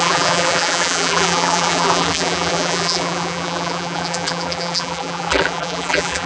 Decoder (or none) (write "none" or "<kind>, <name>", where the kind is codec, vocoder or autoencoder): vocoder, BigVGAN v2